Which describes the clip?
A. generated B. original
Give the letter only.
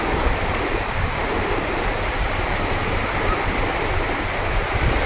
B